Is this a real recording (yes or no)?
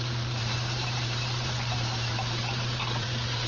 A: no